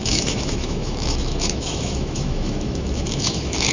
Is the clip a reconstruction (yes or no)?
yes